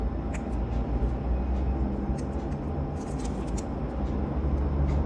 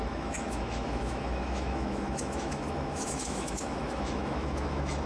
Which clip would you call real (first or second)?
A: first